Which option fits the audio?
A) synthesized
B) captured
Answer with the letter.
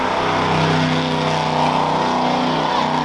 B